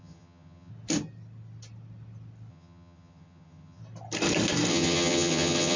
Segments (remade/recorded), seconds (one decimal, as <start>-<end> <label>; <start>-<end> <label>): 0.0-0.7 remade; 0.7-2.5 recorded; 2.5-3.8 remade; 3.8-4.7 recorded; 4.7-5.8 remade

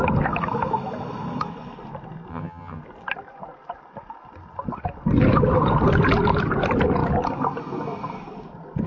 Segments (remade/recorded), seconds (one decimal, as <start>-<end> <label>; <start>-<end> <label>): 0.0-2.3 recorded; 2.3-2.8 remade; 2.8-8.9 recorded

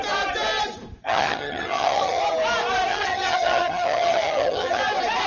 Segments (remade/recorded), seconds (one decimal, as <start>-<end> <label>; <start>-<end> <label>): 0.0-1.0 recorded; 1.0-2.2 remade; 2.2-2.9 recorded; 2.9-4.8 remade; 4.8-5.3 recorded

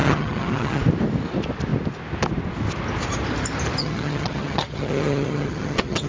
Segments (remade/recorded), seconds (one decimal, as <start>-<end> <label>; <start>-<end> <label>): 0.0-0.8 remade; 0.8-3.8 recorded; 3.8-6.1 remade

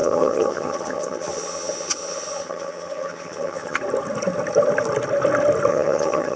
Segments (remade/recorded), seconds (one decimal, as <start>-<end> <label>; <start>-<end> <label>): 0.0-3.8 remade; 3.8-5.7 recorded; 5.7-6.4 remade

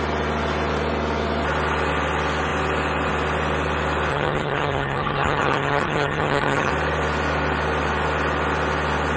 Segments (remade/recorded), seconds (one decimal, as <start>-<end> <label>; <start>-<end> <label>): 0.0-4.1 recorded; 4.1-6.7 remade; 6.7-9.2 recorded

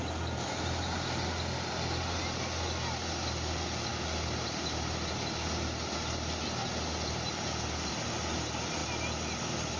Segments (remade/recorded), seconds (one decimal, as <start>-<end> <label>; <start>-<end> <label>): 0.0-9.8 recorded